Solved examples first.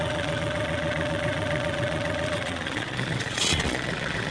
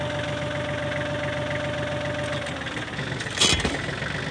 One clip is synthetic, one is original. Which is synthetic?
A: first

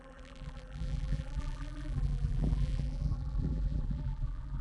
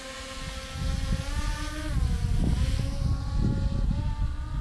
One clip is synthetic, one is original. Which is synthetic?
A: first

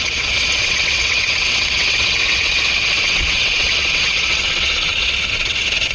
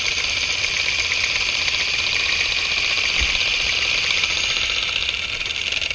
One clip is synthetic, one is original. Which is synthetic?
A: first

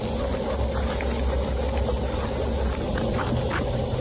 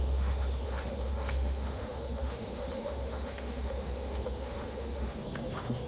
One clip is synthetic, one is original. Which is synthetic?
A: second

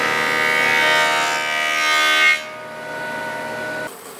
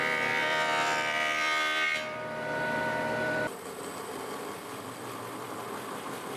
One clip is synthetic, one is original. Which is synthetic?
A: second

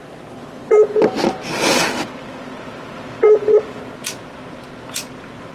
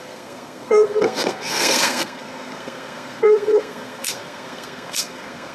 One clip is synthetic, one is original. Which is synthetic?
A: second